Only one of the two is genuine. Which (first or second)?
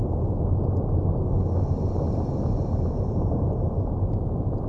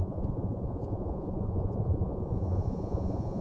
first